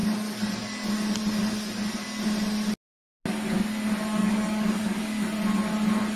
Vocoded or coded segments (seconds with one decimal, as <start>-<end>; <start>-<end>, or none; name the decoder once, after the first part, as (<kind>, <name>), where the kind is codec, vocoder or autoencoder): 4.2-5.2 (codec, DAC)